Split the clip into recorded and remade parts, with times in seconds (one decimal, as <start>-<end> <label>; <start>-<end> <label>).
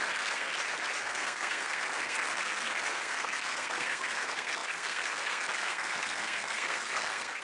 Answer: 0.0-0.5 remade; 0.5-1.0 recorded; 1.0-7.4 remade